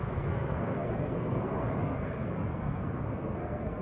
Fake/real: fake